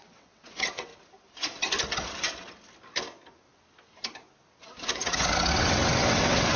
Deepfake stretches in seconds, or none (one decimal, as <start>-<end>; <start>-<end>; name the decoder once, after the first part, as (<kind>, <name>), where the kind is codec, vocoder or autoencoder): 0.0-0.9 (vocoder, WaveNeXt); 4.9-6.6